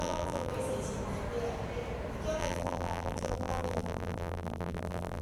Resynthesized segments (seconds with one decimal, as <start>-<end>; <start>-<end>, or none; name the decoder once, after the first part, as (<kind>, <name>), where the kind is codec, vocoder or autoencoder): 0.0-0.5 (vocoder, BigVGAN v2); 2.4-5.2